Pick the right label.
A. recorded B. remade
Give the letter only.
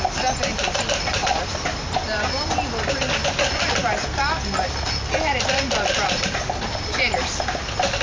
A